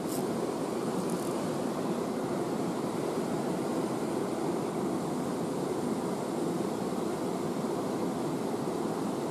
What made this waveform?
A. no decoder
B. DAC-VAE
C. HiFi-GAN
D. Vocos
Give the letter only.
A